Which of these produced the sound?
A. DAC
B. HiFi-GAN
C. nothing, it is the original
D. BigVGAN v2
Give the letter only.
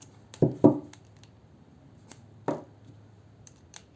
C